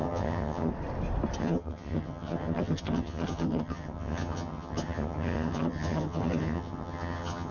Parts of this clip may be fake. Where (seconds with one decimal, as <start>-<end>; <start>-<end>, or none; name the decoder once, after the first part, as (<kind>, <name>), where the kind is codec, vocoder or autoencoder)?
0.0-0.7 (vocoder, HiFi-GAN); 1.4-7.5